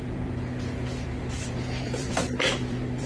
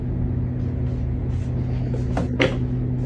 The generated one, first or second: first